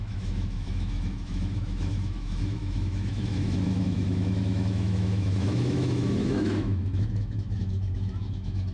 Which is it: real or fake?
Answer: fake